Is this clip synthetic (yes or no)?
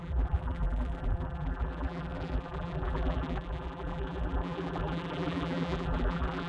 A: yes